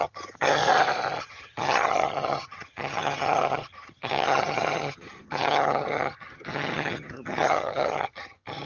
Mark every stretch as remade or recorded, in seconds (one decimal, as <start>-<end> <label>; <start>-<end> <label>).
0.0-0.6 remade; 0.6-1.2 recorded; 1.2-8.7 remade